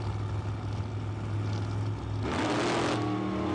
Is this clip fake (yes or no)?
no